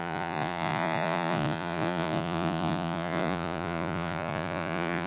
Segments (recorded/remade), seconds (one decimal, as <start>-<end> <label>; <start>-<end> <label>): 0.0-5.1 remade